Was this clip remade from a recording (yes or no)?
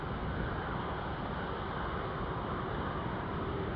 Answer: no